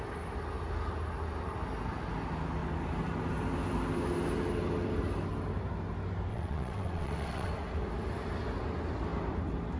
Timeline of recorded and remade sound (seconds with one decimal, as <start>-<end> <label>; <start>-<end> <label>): 0.0-6.3 recorded; 6.3-7.5 remade; 7.5-9.8 recorded